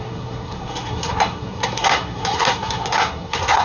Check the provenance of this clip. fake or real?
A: fake